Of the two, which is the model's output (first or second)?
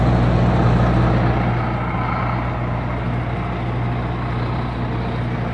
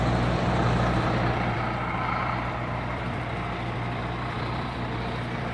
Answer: second